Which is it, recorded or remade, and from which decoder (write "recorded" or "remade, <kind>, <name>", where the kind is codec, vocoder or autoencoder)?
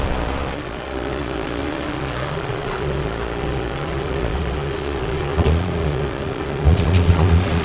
remade, vocoder, Vocos